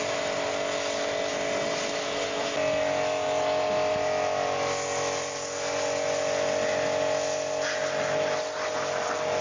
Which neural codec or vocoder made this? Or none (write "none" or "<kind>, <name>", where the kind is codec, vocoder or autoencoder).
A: none